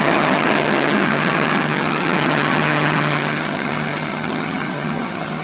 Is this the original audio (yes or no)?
no